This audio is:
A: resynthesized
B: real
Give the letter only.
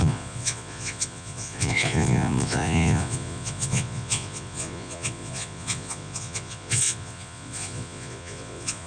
A